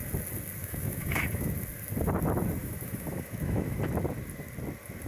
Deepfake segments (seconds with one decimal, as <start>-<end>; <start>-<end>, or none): 0.6-1.5; 2.6-3.8